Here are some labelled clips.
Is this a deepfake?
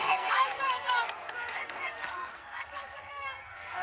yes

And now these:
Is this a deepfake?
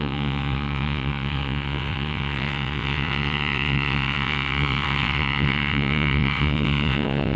yes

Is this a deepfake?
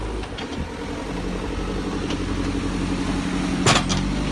no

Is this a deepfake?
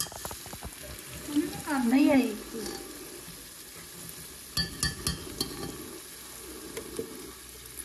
no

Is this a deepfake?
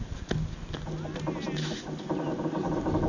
no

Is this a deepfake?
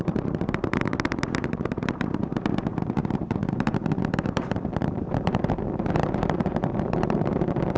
yes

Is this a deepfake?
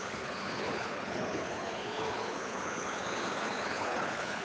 yes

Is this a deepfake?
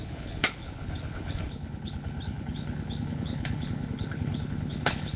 yes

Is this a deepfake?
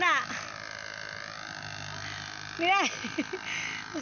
no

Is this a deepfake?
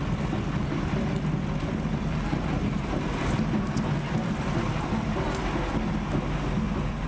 no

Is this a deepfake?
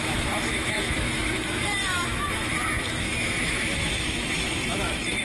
yes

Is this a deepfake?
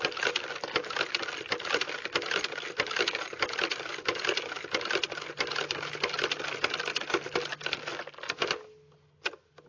no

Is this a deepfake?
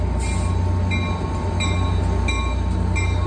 no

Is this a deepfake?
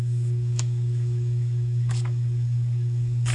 yes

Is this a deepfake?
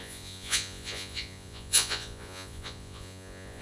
yes